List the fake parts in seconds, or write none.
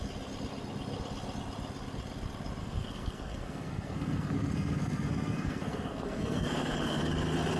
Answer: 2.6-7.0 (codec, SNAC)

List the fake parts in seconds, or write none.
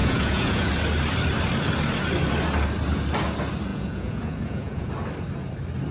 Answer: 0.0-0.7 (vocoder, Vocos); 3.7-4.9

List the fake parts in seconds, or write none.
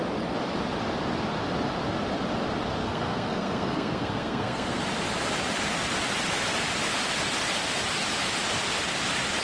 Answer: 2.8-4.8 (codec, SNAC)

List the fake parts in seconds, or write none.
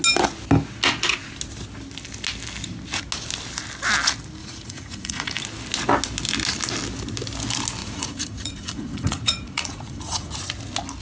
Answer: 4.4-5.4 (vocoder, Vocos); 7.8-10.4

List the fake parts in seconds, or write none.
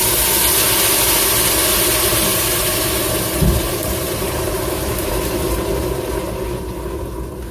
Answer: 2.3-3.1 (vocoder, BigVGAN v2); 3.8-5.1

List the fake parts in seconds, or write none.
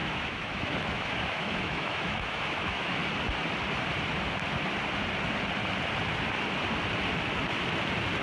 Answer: 0.0-3.0 (autoencoder, DAC-VAE)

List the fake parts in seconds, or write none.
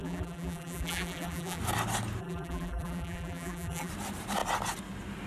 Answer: 0.0-1.6 (vocoder, BigVGAN v2); 2.2-3.9